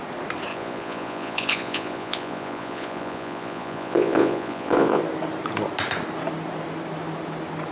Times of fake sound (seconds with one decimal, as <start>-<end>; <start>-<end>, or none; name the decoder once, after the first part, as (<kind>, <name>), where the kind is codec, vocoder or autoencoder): 0.5-5.0 (vocoder, Vocos)